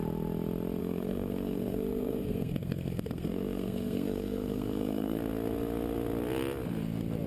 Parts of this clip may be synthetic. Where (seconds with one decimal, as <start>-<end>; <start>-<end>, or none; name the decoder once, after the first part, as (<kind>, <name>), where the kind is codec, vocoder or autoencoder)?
0.8-5.2 (codec, SNAC)